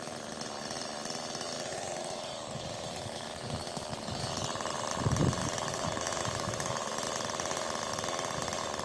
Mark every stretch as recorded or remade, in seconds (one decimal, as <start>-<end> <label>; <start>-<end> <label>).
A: 0.0-1.7 recorded; 1.7-4.2 remade; 4.2-5.4 recorded; 5.4-6.9 remade; 6.9-8.8 recorded